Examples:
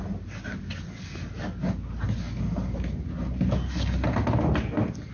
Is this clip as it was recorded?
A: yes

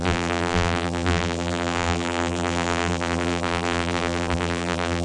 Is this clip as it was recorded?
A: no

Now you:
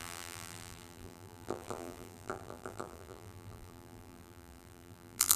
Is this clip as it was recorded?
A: no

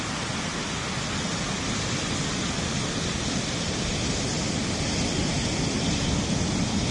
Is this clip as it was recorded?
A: yes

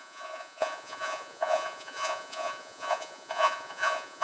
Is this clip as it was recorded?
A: no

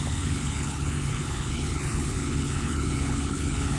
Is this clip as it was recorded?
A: no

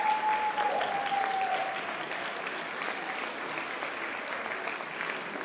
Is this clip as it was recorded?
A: yes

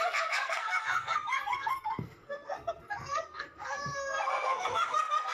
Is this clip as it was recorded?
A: no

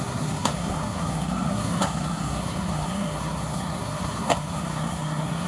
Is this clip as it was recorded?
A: no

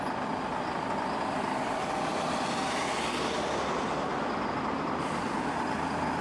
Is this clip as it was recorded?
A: no